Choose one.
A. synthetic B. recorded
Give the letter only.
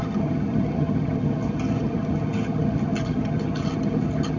A